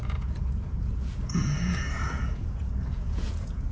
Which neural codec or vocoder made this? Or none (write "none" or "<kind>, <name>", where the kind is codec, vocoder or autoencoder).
vocoder, Vocos